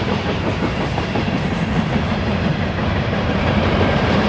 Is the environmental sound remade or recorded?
remade